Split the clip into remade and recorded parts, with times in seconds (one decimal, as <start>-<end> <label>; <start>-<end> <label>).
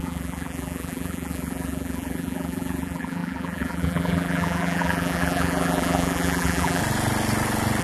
0.0-6.8 remade; 6.8-7.8 recorded